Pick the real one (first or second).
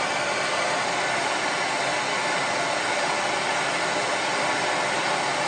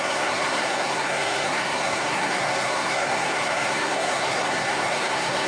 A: first